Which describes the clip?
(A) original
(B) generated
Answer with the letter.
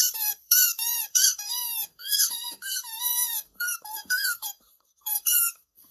B